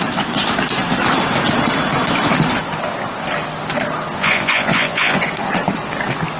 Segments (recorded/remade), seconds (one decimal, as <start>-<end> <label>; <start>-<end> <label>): 0.0-4.2 recorded; 4.2-5.2 remade; 5.2-6.4 recorded